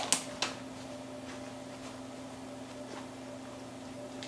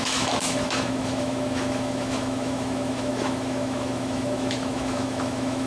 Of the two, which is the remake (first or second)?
second